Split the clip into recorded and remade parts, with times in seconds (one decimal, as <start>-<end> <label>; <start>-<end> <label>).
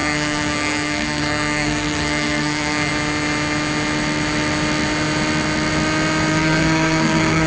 0.0-2.9 remade; 2.9-6.3 recorded; 6.3-7.5 remade